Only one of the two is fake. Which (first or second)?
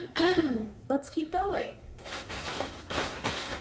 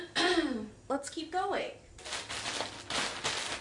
first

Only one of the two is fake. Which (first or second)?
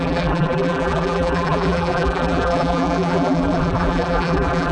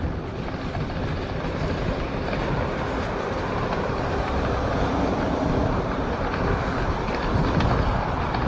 first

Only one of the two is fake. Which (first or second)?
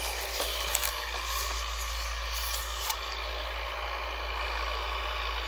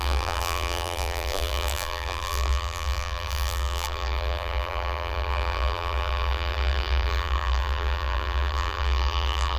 second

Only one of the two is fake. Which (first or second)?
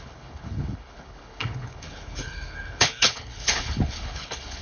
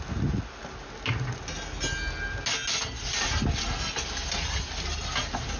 first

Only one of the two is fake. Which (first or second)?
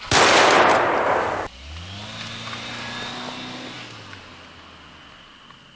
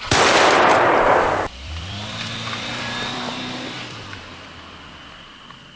second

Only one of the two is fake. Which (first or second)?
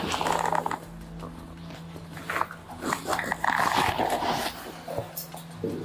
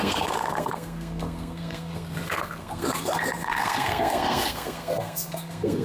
second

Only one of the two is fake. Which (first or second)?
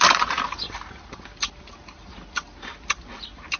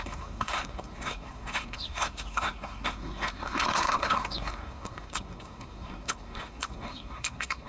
second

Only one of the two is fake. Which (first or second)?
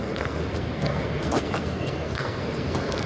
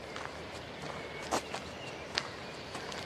first